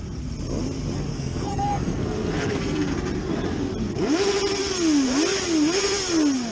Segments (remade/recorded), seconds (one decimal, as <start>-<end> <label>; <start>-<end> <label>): 0.0-1.1 recorded; 1.1-2.9 remade; 2.9-6.5 recorded